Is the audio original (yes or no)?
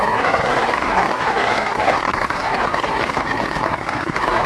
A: no